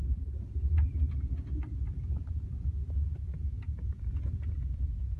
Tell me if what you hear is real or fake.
fake